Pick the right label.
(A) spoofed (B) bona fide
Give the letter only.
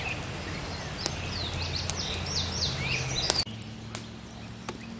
B